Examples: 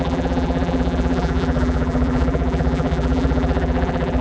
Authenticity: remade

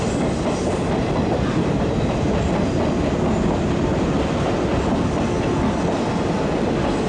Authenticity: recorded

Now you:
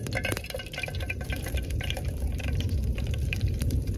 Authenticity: remade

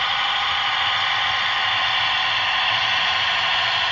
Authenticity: recorded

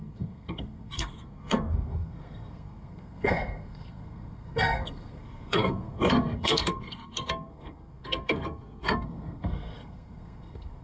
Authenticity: remade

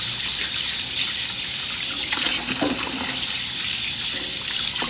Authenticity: remade